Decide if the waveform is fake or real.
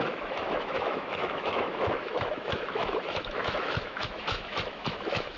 fake